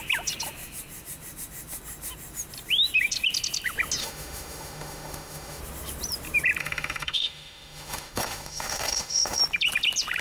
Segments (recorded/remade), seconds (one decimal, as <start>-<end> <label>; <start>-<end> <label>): 0.0-4.0 recorded; 4.0-5.6 remade; 5.6-6.6 recorded; 6.6-9.4 remade; 9.4-10.2 recorded